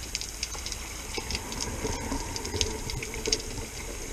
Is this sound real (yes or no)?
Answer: yes